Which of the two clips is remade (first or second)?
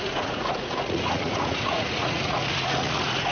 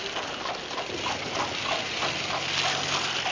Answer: first